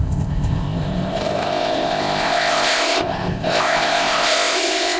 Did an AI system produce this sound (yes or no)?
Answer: yes